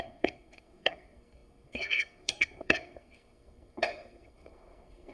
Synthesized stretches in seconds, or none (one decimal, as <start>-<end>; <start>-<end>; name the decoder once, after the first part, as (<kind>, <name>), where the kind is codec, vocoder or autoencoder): 0.0-5.1 (codec, SNAC)